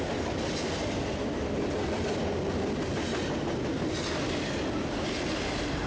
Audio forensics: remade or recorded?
recorded